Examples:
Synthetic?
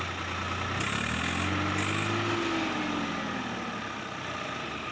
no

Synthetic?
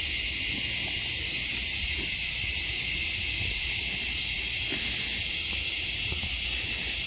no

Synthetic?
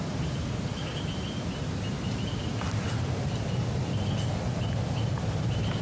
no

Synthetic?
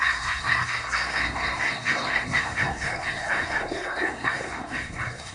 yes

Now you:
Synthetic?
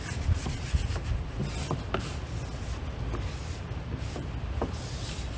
no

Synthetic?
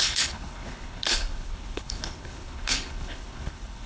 yes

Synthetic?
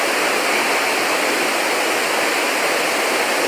no